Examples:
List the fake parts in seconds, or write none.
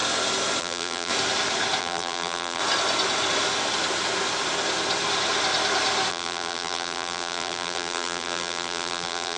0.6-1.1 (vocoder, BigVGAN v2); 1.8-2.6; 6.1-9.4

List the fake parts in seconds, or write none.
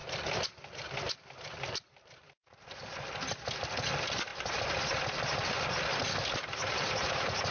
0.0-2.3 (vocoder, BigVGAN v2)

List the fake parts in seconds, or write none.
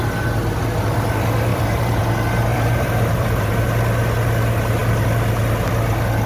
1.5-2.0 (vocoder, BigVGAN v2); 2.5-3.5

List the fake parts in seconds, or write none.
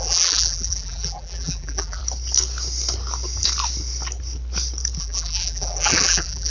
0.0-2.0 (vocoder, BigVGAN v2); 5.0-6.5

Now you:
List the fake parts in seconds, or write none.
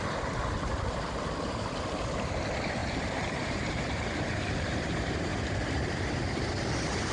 2.8-6.1 (vocoder, BigVGAN v2)